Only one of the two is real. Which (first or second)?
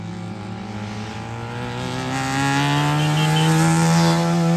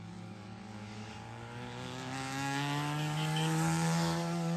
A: first